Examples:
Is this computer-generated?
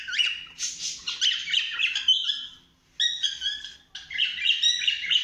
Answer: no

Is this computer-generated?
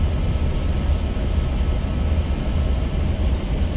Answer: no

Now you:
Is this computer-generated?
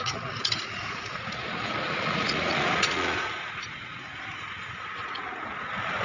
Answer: yes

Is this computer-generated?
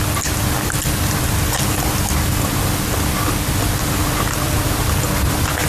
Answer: no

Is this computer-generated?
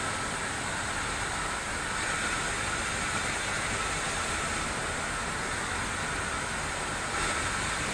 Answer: no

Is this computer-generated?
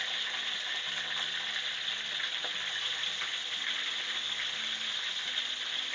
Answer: no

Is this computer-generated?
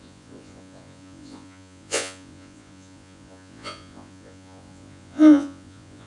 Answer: yes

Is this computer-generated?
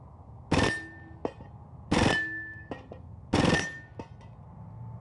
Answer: no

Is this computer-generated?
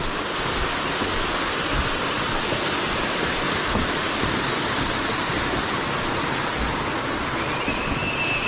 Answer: no